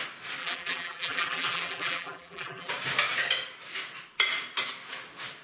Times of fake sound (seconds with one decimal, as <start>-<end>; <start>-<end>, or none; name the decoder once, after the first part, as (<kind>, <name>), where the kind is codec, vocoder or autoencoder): 0.4-2.7 (vocoder, BigVGAN v2)